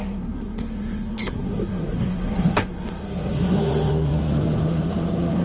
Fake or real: fake